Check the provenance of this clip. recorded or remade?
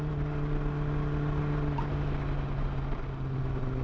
recorded